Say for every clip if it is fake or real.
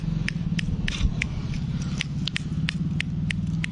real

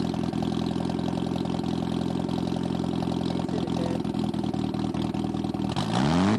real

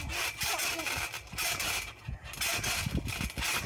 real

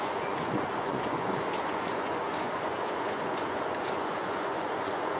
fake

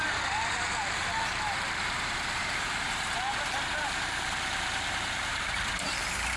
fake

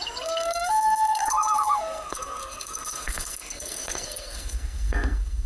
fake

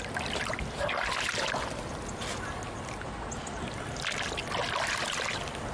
real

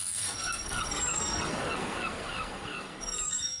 fake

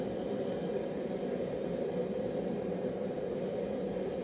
fake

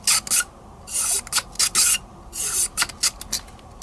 real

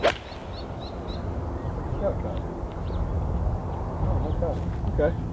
real